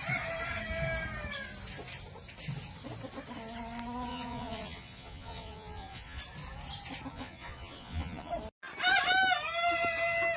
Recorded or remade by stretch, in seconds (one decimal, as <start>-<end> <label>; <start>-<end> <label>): 0.0-4.1 recorded; 4.1-6.2 remade; 6.2-7.1 recorded; 7.1-8.3 remade; 8.3-10.4 recorded